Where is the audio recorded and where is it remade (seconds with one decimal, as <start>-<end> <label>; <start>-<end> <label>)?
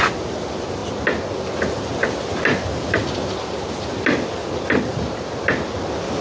0.0-6.2 recorded